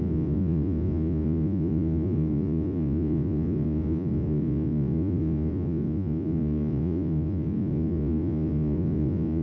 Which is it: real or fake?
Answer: fake